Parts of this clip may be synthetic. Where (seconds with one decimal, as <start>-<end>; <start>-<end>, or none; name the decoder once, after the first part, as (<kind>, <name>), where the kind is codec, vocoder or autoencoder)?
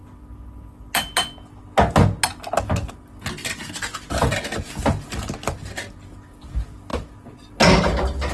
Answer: none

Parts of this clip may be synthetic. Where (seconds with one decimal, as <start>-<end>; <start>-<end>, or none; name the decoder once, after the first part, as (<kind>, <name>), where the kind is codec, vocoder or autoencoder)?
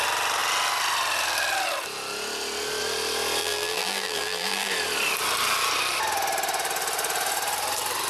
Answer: 3.4-4.7 (vocoder, BigVGAN v2)